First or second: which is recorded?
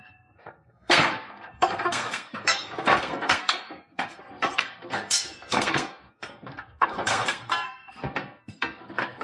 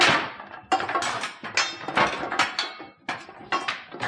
second